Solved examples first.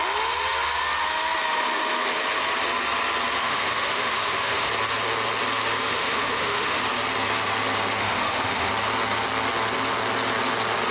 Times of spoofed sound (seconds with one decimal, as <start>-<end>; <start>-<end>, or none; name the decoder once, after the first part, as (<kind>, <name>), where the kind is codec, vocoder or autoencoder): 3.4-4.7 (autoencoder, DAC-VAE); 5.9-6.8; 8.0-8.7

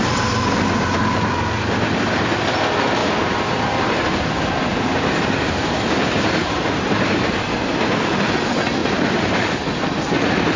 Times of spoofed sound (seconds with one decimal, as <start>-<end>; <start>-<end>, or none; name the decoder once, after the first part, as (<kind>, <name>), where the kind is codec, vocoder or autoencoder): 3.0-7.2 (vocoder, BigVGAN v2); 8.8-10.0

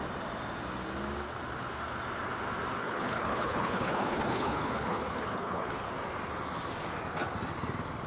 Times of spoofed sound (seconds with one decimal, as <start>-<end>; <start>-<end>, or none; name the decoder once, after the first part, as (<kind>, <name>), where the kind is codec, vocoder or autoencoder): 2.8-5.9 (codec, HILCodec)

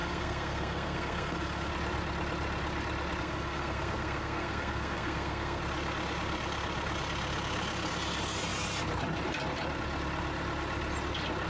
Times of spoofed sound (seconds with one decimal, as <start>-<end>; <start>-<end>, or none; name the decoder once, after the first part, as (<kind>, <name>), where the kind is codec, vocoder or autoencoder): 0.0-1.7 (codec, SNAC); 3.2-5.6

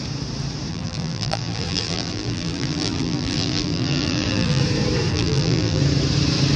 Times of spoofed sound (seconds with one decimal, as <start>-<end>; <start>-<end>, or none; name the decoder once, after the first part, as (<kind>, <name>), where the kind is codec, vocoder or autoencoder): 0.7-4.6 (vocoder, BigVGAN v2); 5.1-5.8

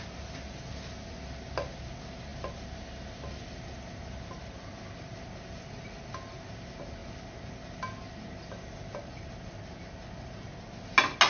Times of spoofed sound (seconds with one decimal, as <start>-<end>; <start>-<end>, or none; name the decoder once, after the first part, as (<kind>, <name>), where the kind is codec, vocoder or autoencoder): none

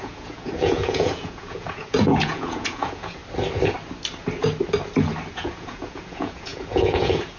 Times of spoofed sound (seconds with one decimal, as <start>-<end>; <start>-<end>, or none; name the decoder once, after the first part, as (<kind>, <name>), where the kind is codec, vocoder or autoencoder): 0.0-3.2 (vocoder, Vocos); 5.3-7.4